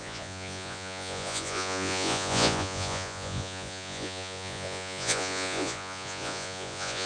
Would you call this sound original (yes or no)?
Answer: no